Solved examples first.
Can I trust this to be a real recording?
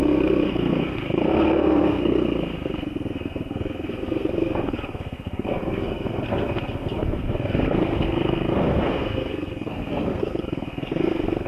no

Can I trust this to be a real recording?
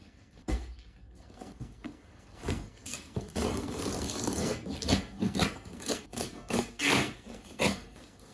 no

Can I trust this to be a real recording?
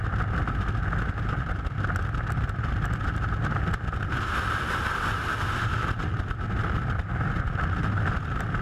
yes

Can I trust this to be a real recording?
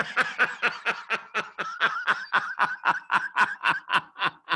yes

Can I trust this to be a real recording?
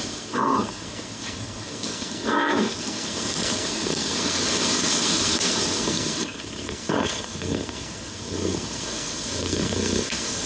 no